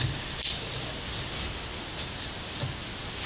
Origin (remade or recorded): recorded